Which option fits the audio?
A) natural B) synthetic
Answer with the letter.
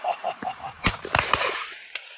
B